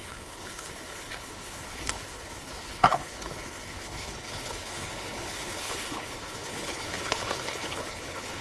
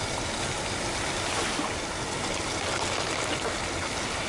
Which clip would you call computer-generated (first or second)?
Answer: first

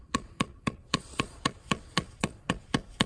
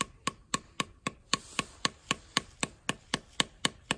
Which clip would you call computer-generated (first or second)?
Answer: first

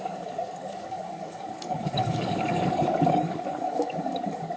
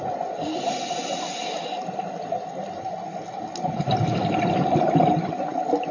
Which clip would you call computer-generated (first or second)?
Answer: first